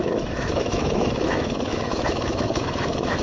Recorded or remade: remade